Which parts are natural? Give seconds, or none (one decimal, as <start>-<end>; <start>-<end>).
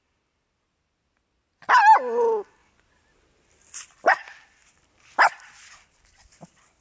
0.0-6.8